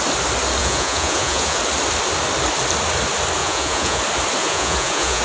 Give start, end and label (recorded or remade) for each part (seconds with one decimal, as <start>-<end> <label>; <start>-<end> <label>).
0.0-0.6 recorded; 0.6-1.6 remade; 1.6-3.4 recorded; 3.4-4.0 remade; 4.0-4.4 recorded; 4.4-5.2 remade